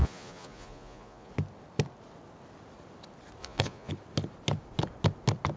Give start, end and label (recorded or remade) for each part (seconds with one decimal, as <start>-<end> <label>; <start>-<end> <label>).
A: 0.0-1.3 remade; 1.3-3.4 recorded; 3.4-3.9 remade; 3.9-5.6 recorded